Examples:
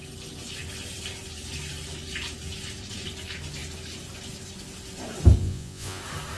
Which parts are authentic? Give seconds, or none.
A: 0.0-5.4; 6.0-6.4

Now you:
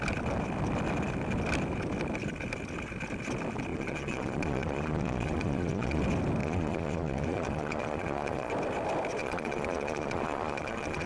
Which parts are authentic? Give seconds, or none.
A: 0.0-3.7; 6.0-6.4; 8.5-9.2

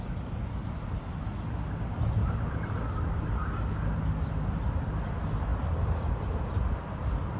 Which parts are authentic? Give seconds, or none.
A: 0.0-7.4

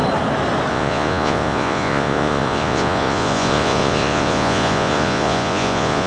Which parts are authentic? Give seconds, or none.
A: 0.0-0.7

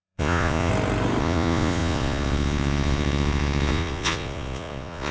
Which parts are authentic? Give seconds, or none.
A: 0.7-1.2